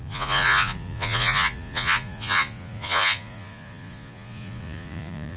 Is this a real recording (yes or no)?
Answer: no